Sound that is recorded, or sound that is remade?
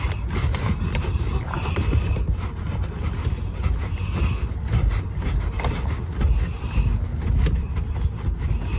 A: recorded